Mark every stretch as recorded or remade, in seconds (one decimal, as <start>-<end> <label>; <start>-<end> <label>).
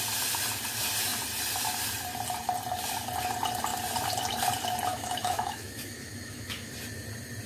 0.0-4.9 recorded; 4.9-6.7 remade; 6.7-7.5 recorded